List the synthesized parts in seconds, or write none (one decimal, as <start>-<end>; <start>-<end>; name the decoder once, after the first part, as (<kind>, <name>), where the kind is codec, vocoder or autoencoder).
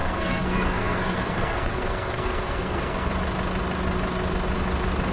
0.0-3.1 (codec, SNAC)